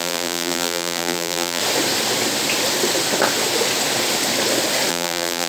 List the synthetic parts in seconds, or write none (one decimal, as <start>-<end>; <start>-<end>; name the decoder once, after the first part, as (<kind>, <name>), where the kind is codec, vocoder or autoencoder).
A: 0.0-1.6 (vocoder, BigVGAN v2); 4.9-5.5